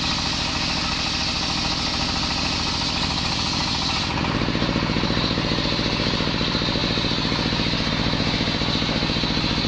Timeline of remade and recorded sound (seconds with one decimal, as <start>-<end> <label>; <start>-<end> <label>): 0.0-9.7 recorded